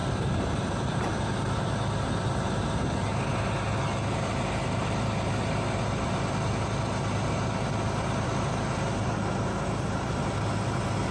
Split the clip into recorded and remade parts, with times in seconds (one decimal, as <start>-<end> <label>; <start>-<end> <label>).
0.0-11.1 recorded